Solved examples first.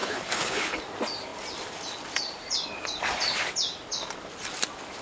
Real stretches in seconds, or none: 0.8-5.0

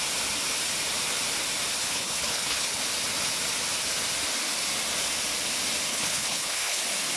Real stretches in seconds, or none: 0.0-1.8; 2.8-5.9; 6.8-7.2

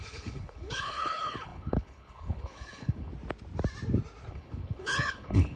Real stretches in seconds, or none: 3.1-4.3